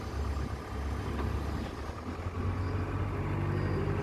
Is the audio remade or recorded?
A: recorded